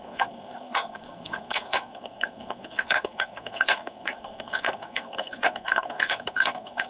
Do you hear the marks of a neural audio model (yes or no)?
yes